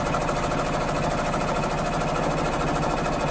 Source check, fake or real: real